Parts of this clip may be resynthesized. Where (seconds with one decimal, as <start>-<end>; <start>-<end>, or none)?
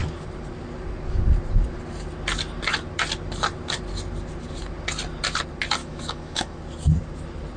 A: 5.8-6.6